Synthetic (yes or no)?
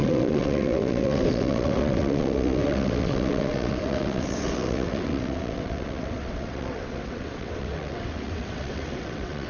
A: yes